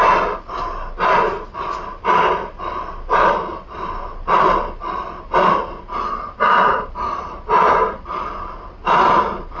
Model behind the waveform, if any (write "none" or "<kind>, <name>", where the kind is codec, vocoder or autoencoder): none